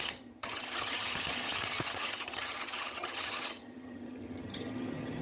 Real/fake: fake